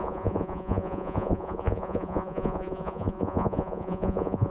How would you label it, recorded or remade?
remade